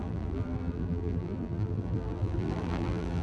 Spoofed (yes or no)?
yes